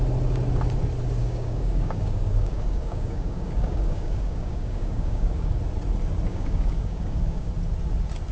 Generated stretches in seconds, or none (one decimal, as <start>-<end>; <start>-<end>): 1.2-5.6; 6.3-7.5